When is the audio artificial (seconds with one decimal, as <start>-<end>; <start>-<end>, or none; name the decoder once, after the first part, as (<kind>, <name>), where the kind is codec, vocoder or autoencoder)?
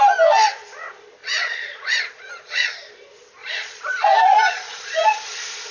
1.2-2.8 (vocoder, Vocos); 3.4-5.1